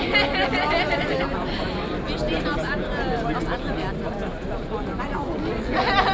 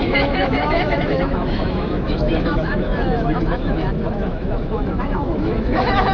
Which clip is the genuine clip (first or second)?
first